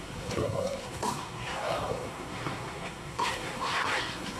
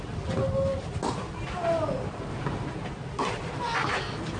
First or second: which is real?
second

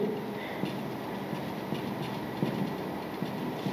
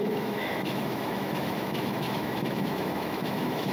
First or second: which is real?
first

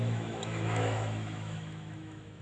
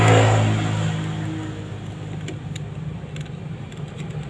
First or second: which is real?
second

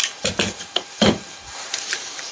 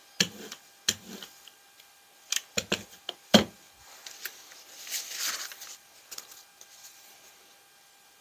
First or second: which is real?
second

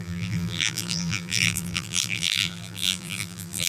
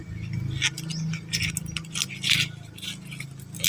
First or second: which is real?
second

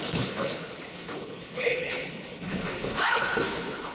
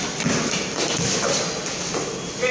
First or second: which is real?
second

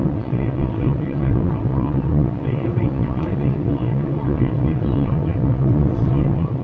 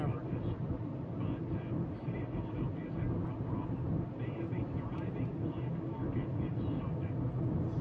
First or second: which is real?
second